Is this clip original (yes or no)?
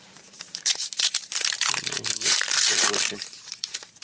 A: no